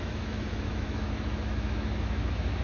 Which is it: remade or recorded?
remade